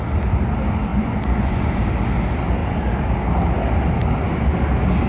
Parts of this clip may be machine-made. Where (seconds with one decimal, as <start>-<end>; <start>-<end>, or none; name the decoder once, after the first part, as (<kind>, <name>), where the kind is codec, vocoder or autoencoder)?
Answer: 0.9-1.8 (vocoder, Vocos)